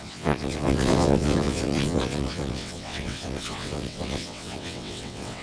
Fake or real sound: fake